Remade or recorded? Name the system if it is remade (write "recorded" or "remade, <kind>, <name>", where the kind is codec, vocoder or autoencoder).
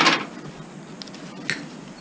recorded